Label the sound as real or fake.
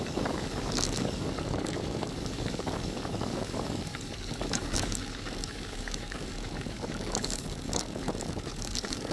fake